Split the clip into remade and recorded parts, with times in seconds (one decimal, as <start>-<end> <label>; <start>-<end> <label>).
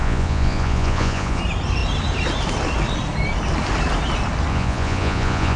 0.0-1.4 remade; 1.4-4.5 recorded; 4.5-5.6 remade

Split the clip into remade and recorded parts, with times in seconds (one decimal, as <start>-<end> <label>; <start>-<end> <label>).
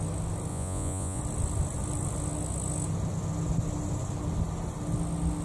0.0-0.5 recorded; 0.5-1.2 remade; 1.2-5.4 recorded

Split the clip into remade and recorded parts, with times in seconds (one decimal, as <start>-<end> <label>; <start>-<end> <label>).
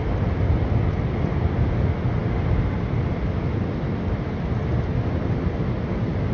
0.0-6.3 recorded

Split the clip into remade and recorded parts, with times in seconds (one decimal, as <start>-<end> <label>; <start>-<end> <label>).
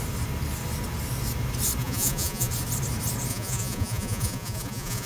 0.0-1.8 recorded; 1.8-2.5 remade; 2.5-3.3 recorded; 3.3-5.1 remade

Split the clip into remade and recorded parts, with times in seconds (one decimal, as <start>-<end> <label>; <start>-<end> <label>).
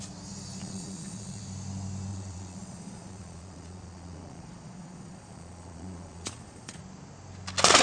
0.0-0.6 recorded; 0.6-1.4 remade; 1.4-2.1 recorded; 2.1-6.8 remade; 6.8-7.8 recorded